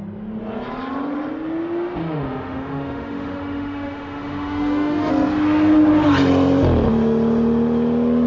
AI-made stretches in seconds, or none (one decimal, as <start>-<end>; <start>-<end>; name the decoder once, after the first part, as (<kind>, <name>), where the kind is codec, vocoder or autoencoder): 2.0-5.1 (autoencoder, DAC-VAE)